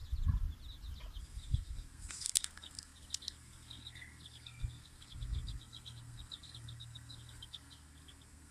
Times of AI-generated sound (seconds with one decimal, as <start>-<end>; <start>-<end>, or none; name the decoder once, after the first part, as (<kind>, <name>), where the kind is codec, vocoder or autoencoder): 1.2-8.5 (codec, SNAC)